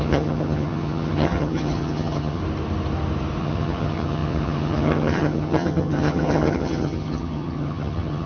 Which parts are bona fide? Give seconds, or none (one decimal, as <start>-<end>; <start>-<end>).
2.4-3.4

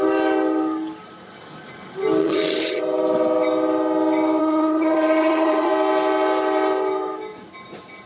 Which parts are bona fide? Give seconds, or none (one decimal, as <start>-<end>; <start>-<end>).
0.0-2.2; 2.8-4.4; 5.7-8.1

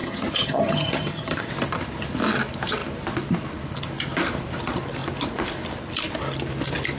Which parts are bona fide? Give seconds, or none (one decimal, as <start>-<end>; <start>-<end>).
1.5-7.0

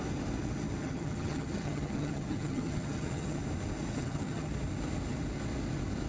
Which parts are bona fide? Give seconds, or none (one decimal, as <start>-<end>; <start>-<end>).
0.0-0.8; 3.4-3.9; 4.5-6.1

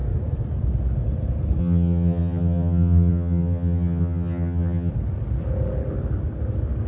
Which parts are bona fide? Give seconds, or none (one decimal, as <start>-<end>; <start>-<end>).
0.0-1.6; 4.9-6.9

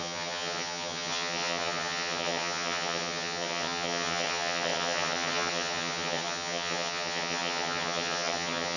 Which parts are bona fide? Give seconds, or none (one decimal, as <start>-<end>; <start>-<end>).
none

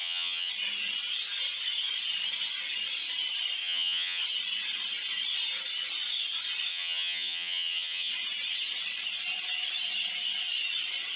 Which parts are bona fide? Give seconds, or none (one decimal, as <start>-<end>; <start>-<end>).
0.5-3.6; 4.2-6.7; 8.1-11.2

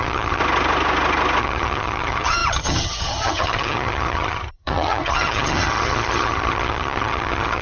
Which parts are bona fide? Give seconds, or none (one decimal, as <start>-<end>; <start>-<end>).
0.4-1.4